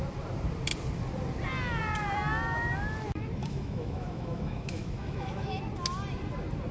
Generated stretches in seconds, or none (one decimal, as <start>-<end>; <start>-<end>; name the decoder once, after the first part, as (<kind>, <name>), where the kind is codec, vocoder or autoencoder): 3.4-5.6 (autoencoder, DAC-VAE)